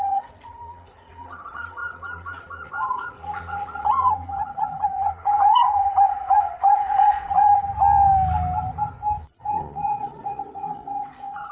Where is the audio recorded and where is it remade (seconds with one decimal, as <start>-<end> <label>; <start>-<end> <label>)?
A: 0.0-7.5 remade; 7.5-9.2 recorded; 9.2-11.5 remade